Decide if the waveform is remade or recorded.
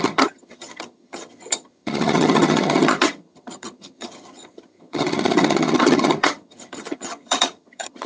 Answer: remade